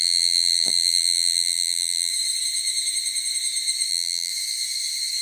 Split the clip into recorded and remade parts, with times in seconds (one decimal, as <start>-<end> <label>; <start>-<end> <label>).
0.0-2.1 remade; 2.1-3.9 recorded; 3.9-4.3 remade; 4.3-5.2 recorded